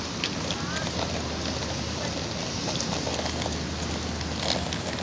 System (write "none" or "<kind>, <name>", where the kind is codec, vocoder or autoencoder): none